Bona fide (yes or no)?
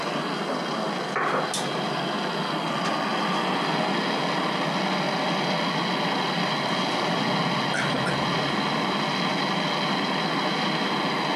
yes